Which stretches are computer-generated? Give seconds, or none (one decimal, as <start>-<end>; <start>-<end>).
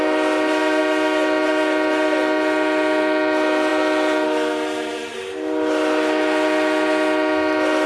none